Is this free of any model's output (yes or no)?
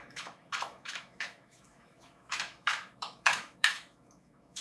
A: no